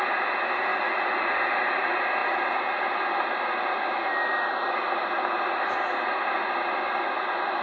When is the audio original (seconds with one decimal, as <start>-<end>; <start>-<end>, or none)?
0.0-0.7; 1.4-7.6